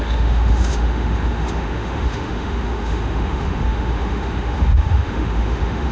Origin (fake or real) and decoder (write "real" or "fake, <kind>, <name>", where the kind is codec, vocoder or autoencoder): fake, autoencoder, DAC-VAE